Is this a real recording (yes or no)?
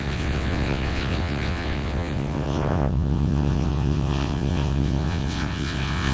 no